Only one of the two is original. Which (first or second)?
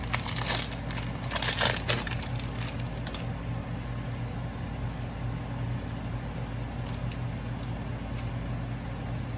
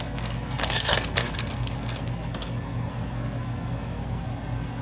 first